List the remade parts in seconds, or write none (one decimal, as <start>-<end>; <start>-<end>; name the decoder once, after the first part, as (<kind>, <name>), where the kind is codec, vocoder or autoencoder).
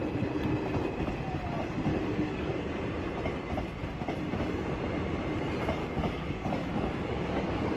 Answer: 1.9-2.7 (codec, DAC); 5.8-7.8